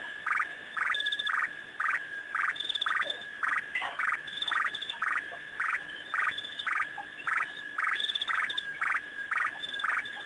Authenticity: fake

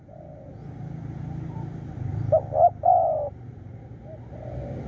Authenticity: real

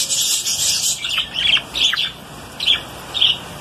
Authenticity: real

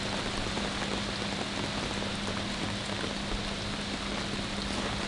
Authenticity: real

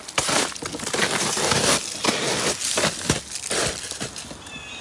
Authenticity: real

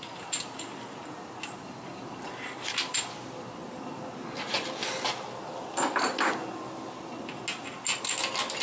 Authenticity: real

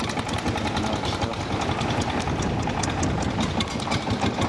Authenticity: real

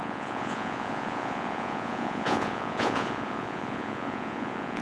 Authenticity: fake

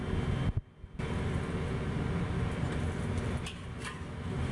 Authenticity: real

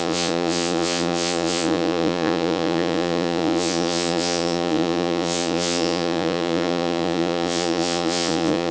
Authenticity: fake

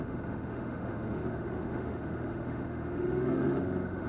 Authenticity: fake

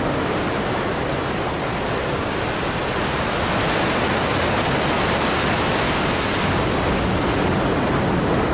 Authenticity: real